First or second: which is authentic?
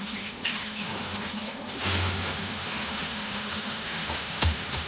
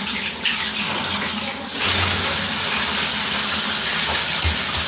second